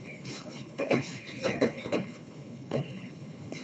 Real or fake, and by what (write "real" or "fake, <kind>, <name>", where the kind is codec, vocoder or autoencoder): fake, codec, HILCodec